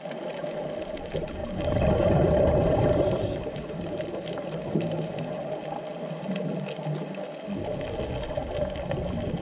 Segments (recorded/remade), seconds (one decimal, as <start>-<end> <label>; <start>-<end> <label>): 0.0-1.4 recorded; 1.4-5.8 remade; 5.8-9.4 recorded